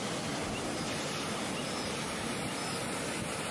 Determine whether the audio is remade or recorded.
recorded